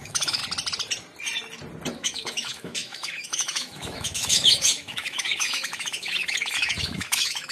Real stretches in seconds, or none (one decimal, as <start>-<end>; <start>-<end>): 0.4-1.9